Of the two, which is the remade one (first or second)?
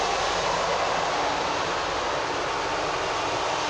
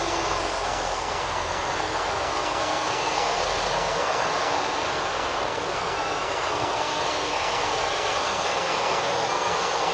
second